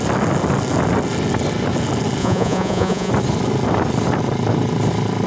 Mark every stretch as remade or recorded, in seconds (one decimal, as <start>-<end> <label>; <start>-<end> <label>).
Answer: 0.0-2.2 recorded; 2.2-3.1 remade; 3.1-5.3 recorded